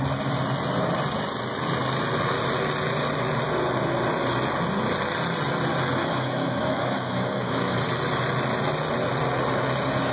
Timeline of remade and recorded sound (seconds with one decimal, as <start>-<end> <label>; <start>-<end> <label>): 0.0-6.0 recorded; 6.0-7.9 remade; 7.9-10.1 recorded